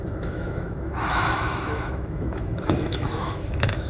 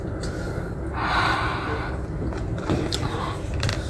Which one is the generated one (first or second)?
first